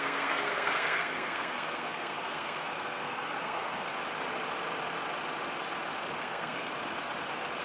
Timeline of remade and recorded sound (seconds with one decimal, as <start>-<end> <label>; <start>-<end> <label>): 0.0-3.9 remade; 3.9-6.2 recorded; 6.2-6.7 remade; 6.7-7.6 recorded